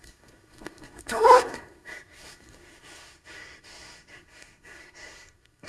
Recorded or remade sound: remade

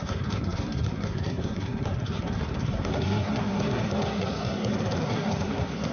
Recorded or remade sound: remade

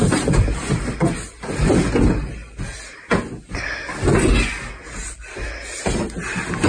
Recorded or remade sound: recorded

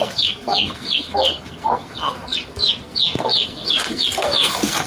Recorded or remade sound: remade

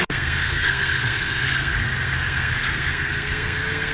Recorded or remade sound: remade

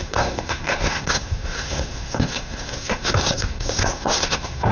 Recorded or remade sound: remade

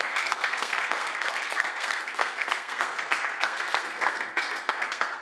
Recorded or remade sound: remade